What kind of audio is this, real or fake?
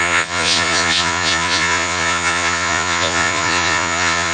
fake